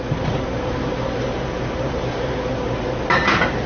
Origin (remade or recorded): remade